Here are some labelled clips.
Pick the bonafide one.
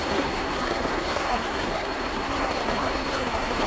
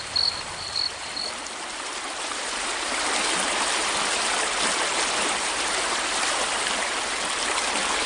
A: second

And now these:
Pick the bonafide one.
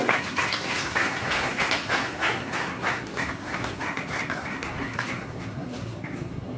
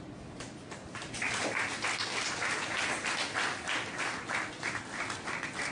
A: second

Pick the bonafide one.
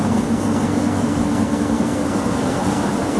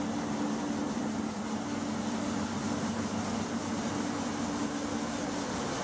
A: second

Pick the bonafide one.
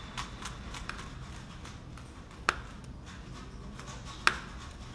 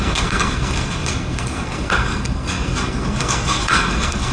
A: first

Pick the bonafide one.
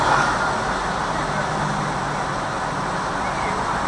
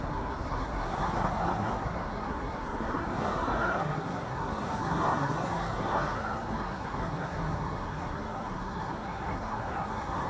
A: first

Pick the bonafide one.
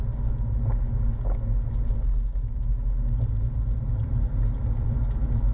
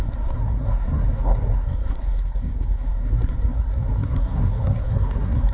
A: first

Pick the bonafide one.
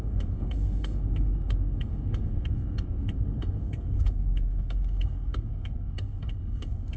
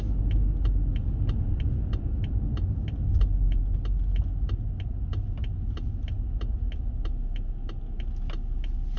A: second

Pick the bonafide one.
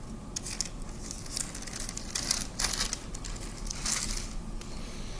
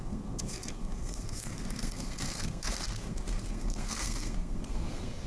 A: first